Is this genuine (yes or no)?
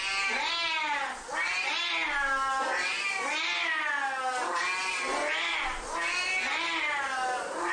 yes